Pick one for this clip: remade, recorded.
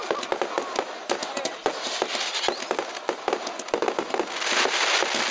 recorded